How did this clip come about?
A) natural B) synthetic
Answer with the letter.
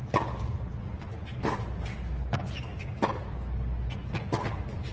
A